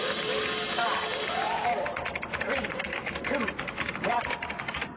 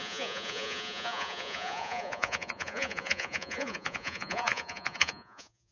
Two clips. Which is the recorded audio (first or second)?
first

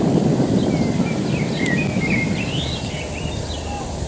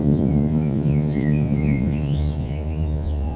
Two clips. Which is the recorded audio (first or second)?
first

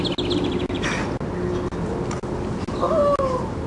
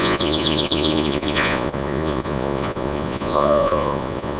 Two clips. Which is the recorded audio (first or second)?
first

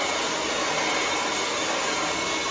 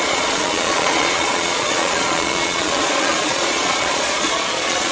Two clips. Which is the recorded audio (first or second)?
first